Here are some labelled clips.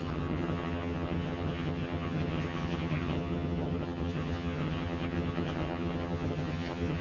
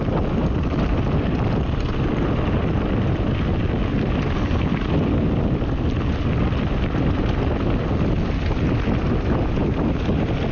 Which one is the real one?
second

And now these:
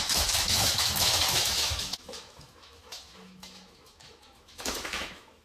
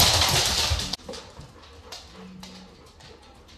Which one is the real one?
second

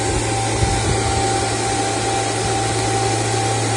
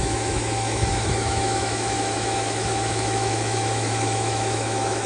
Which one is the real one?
first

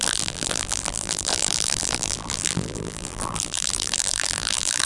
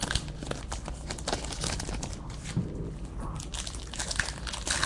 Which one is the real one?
second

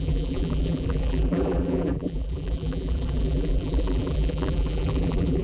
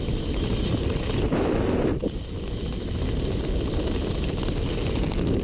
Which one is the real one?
second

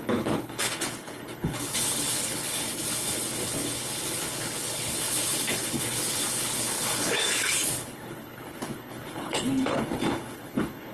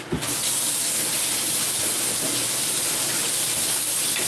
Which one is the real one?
second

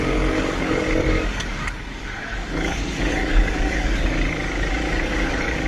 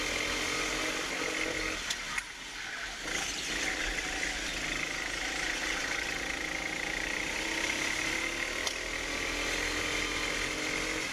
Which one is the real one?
second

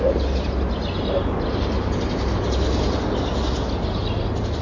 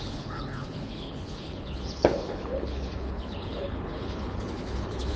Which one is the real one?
first